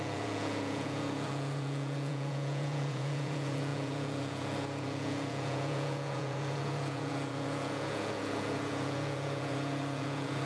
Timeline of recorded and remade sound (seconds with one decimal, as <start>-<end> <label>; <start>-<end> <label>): 0.0-10.5 remade